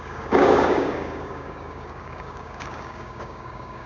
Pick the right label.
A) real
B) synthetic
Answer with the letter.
B